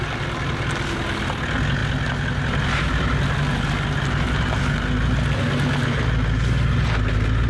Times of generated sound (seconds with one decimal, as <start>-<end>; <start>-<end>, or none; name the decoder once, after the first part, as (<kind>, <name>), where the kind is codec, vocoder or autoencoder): none